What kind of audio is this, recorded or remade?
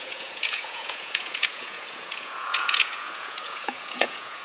remade